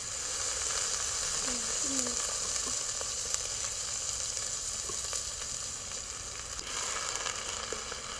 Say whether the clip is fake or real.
real